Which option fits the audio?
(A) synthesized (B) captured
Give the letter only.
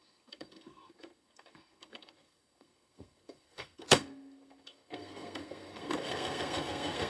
A